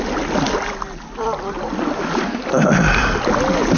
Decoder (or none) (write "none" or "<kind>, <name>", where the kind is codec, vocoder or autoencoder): none